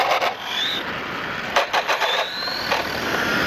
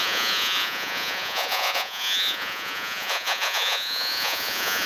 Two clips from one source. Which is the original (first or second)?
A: first